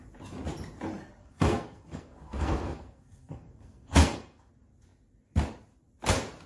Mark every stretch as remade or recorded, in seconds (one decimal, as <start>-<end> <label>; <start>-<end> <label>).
0.0-1.2 recorded; 1.2-4.5 remade; 4.5-6.5 recorded